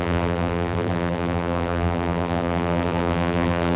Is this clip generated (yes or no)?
yes